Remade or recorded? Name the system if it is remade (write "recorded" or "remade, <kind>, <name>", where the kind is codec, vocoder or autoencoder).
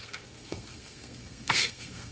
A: remade, codec, SNAC